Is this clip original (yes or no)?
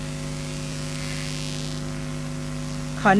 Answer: yes